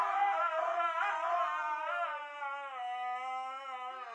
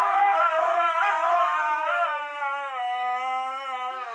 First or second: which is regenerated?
second